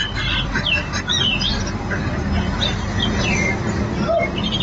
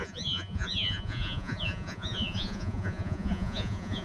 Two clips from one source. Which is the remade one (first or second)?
second